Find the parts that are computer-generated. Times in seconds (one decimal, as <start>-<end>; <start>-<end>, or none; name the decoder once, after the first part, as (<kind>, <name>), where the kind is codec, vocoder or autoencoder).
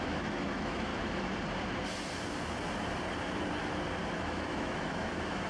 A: 0.0-0.9 (autoencoder, DAC-VAE); 4.2-5.5